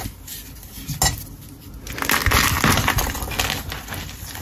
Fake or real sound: real